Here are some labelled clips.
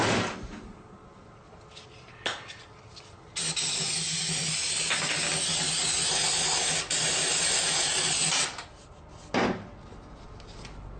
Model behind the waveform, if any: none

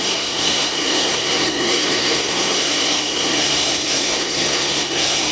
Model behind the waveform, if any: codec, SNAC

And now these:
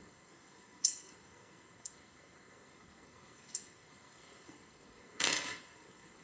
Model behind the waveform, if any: codec, SNAC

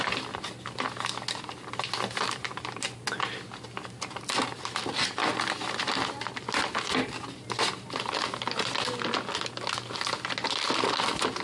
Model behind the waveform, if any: none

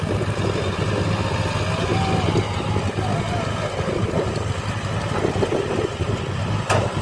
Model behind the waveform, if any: none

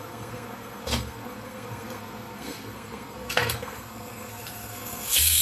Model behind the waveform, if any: codec, SNAC